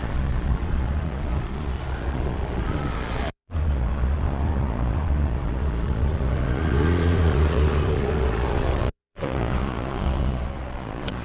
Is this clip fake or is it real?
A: fake